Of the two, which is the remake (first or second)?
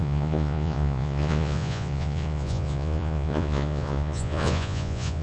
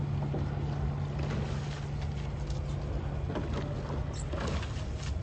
first